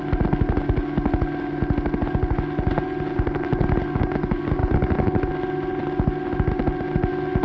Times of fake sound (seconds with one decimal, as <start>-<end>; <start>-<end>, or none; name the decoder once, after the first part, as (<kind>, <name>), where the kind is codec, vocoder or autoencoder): none